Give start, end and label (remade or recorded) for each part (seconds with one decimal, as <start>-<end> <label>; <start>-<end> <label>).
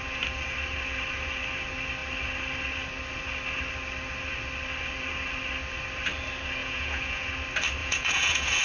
0.0-6.6 recorded; 6.6-7.3 remade; 7.3-7.8 recorded; 7.8-8.6 remade